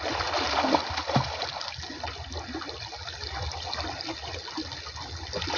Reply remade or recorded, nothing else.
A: recorded